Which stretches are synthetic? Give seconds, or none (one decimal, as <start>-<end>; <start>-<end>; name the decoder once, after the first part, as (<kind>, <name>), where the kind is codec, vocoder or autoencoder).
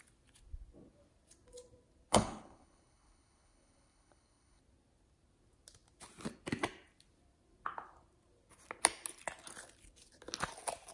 2.1-4.6 (codec, HILCodec)